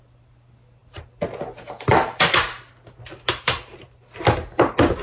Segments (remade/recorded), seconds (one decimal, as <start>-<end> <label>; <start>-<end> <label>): 0.0-5.0 recorded